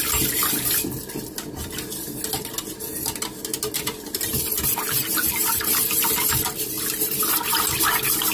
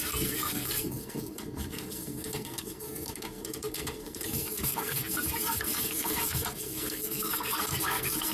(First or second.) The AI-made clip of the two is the second